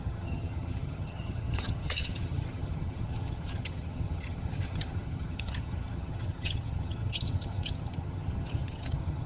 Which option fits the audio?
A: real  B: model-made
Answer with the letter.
B